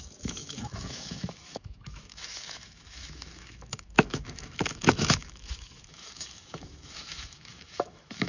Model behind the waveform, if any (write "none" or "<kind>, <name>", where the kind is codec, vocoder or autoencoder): autoencoder, DAC-VAE